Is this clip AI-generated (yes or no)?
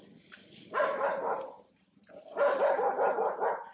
no